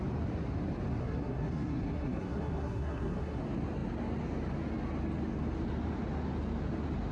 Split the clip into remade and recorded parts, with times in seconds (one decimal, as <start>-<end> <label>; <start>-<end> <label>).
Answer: 0.0-1.0 recorded; 1.0-3.4 remade; 3.4-7.1 recorded